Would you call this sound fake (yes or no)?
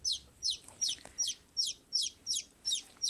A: no